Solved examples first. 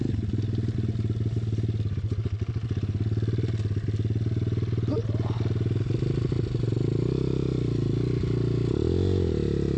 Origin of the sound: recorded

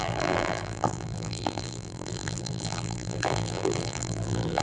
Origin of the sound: remade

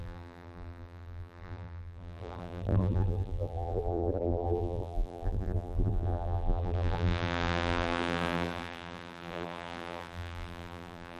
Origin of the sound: remade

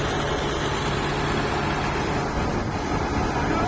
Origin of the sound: recorded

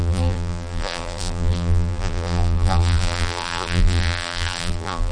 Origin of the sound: remade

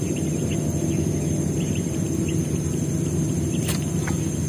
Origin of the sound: recorded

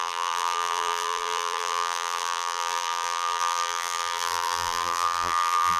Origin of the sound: remade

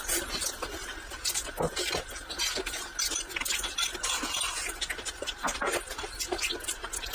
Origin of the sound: recorded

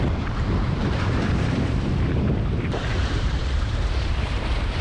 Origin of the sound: remade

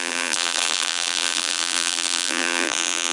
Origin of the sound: remade